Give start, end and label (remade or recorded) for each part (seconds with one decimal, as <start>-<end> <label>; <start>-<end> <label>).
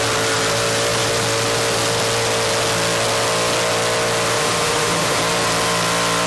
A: 0.0-4.3 recorded; 4.3-5.2 remade; 5.2-6.3 recorded